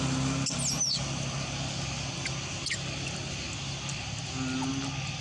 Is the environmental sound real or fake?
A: real